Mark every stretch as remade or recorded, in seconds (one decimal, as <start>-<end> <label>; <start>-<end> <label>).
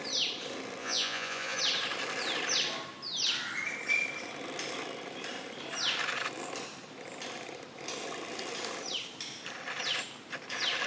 0.0-0.8 recorded; 0.8-1.6 remade; 1.6-10.9 recorded